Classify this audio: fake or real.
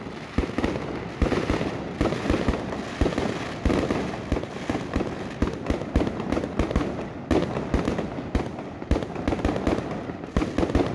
real